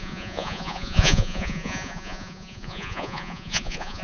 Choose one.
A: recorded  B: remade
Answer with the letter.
B